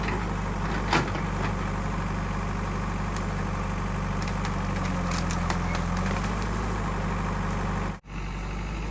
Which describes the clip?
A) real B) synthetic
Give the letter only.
A